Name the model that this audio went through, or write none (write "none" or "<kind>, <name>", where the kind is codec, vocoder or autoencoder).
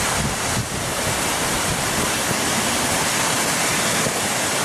none